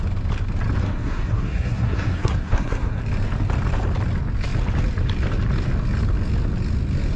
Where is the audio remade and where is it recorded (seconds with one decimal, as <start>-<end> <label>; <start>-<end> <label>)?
0.0-0.8 recorded; 0.8-3.0 remade; 3.0-7.2 recorded